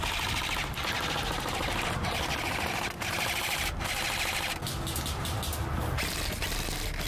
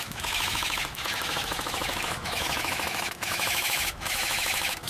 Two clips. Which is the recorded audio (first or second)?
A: first